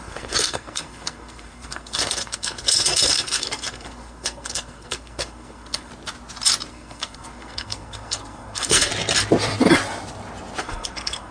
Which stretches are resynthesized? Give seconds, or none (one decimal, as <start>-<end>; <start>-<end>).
0.0-5.9; 6.7-8.9; 10.6-11.3